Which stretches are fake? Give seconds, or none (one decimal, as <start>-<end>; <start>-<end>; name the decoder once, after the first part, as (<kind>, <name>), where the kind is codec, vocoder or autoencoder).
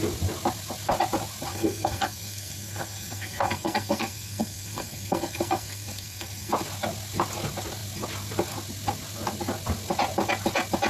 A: 1.5-6.5 (codec, SNAC)